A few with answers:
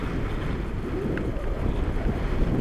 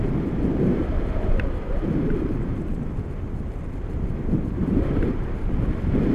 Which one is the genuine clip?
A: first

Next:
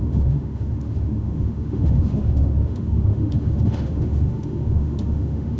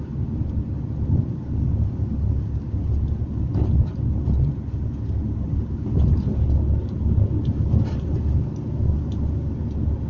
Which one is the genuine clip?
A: second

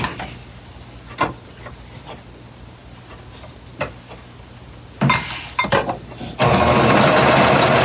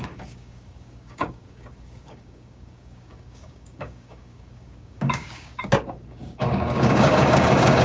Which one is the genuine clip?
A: first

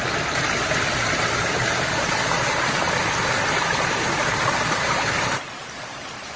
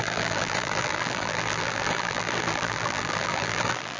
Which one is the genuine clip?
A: first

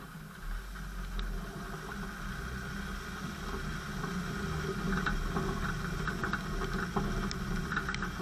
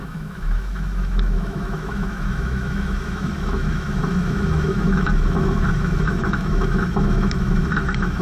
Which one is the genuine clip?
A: first